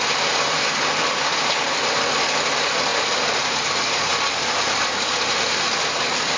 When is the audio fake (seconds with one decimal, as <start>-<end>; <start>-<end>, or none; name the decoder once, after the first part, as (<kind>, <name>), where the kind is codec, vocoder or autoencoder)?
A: none